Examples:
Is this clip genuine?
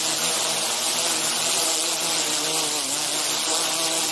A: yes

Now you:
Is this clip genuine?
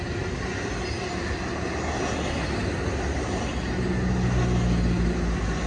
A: yes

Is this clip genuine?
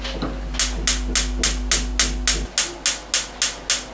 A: yes